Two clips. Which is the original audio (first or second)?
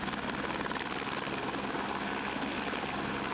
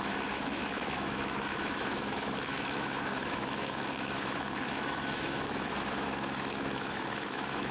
first